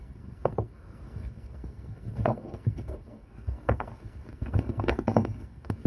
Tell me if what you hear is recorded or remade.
remade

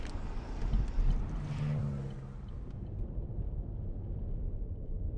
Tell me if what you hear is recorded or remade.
recorded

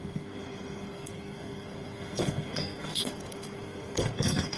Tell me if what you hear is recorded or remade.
remade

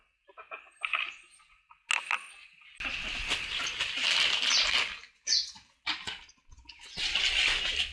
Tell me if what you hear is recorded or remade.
recorded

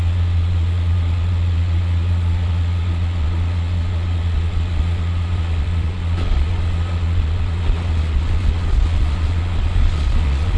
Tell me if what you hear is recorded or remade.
remade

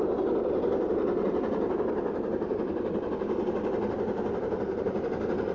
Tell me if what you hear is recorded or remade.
remade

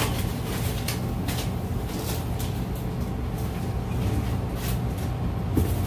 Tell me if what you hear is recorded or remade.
recorded